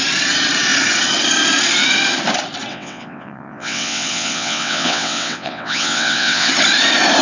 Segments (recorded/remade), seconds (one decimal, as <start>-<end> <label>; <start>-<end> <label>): 0.0-2.7 recorded; 2.7-6.5 remade; 6.5-7.2 recorded